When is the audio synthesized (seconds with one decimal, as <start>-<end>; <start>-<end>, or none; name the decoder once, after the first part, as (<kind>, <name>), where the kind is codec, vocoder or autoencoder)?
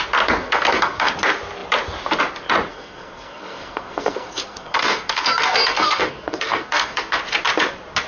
0.4-1.1 (codec, SNAC); 2.7-7.2